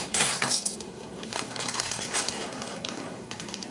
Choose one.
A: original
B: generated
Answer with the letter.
B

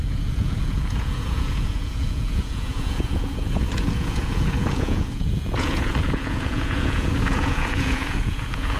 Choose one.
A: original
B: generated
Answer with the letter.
B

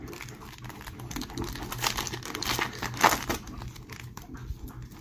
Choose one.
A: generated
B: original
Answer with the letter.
B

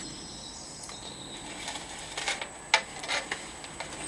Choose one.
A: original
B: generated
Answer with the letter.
A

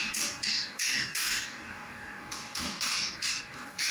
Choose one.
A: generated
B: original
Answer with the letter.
A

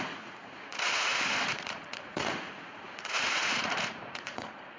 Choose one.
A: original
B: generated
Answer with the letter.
B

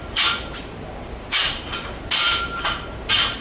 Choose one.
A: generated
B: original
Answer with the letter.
A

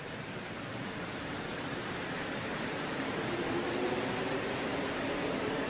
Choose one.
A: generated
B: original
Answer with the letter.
A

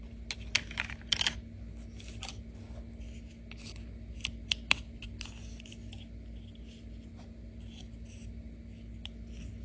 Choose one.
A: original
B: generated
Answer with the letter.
A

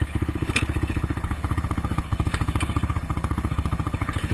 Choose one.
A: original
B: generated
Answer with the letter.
B